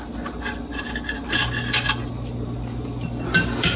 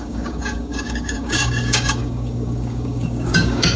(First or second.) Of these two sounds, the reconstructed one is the second